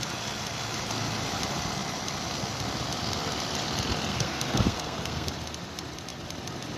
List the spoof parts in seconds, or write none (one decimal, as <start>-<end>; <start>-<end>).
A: 4.1-5.3